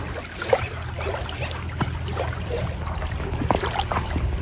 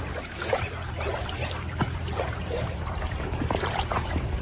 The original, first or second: first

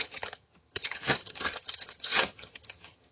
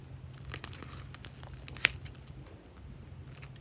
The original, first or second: second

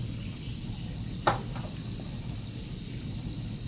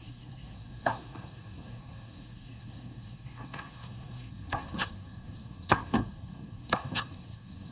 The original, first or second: first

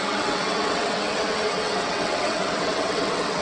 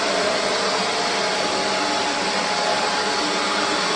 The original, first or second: second